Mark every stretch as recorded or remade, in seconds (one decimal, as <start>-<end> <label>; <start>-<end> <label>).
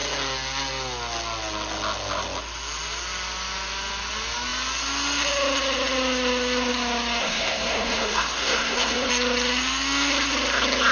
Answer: 0.0-7.2 recorded; 7.2-9.1 remade; 9.1-10.9 recorded